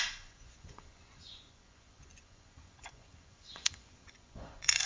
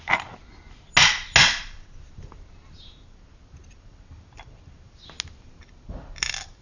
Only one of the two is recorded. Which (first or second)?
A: second